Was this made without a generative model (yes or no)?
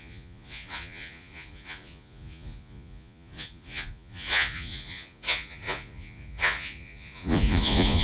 no